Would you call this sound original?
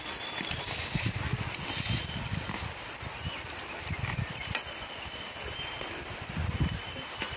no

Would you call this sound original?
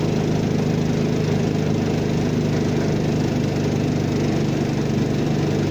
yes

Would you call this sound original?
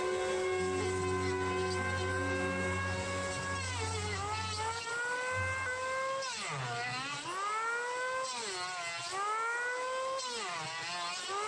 yes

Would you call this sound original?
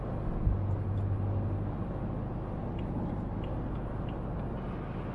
yes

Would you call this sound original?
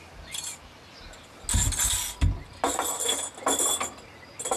yes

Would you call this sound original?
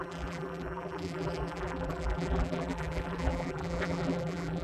no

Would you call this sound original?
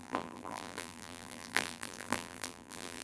no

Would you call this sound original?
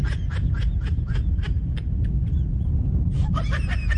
no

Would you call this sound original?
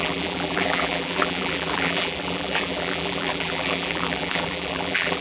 no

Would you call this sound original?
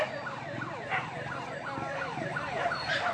yes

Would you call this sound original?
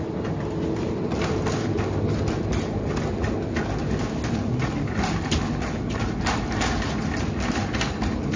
yes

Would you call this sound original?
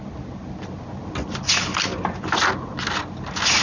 yes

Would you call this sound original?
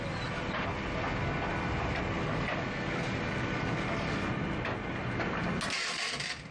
yes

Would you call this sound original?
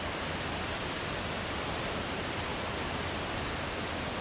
no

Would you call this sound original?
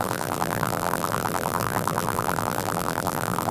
no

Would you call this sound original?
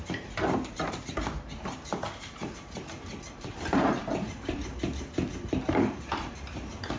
no